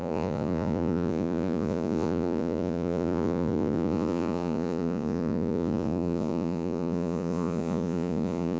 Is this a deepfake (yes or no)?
yes